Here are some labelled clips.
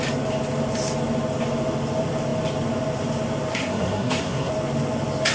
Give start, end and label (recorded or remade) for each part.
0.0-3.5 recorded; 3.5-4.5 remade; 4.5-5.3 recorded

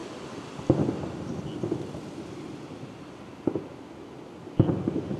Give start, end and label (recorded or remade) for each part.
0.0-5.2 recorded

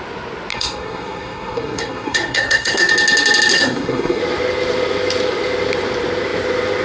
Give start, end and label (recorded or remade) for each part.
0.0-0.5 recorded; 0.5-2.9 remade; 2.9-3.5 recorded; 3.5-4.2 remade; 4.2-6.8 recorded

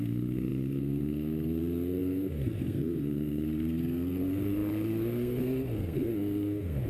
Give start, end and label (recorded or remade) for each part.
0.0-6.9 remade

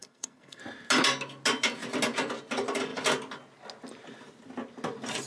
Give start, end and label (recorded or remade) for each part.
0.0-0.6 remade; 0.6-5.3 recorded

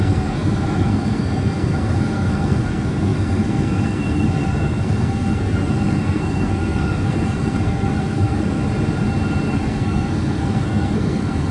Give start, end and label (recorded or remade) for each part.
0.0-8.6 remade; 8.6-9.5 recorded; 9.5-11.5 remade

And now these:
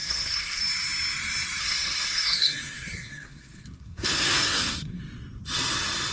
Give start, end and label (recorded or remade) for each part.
0.0-0.6 remade; 0.6-1.6 recorded; 1.6-5.0 remade; 5.0-6.1 recorded